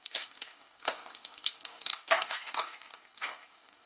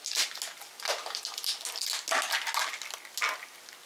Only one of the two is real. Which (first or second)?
second